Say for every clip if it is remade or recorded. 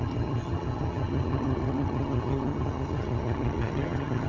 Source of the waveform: remade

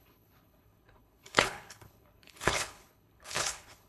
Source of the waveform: remade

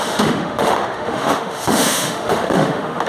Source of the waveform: remade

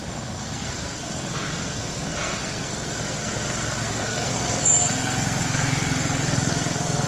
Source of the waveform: remade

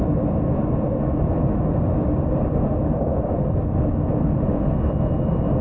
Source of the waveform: recorded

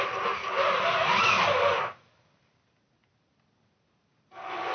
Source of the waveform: recorded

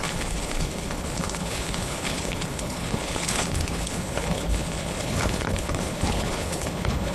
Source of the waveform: remade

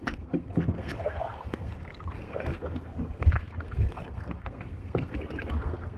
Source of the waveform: remade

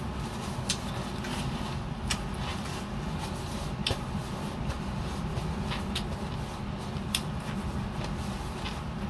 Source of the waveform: recorded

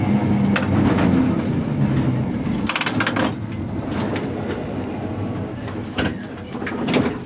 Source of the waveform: recorded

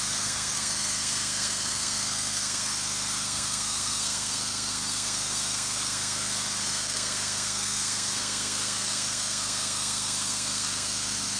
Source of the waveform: remade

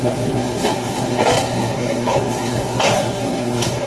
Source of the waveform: remade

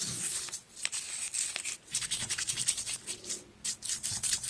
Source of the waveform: remade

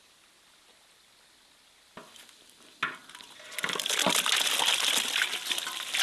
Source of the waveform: recorded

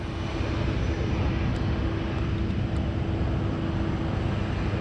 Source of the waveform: recorded